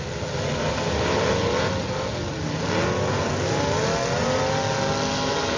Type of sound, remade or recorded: recorded